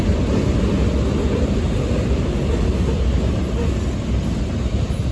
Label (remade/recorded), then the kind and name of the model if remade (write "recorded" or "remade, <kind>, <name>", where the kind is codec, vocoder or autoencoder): recorded